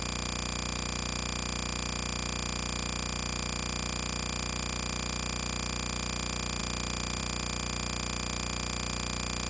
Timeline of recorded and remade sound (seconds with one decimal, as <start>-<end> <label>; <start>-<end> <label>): 0.0-9.5 recorded